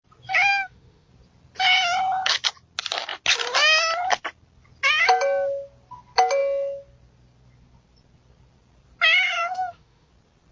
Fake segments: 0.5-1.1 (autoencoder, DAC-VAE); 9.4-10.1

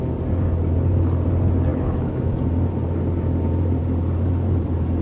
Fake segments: 1.7-2.3 (autoencoder, DAC-VAE)

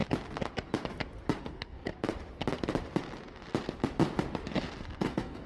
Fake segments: 1.4-1.9 (codec, SNAC); 4.8-5.5